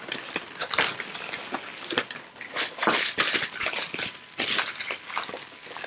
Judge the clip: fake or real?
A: real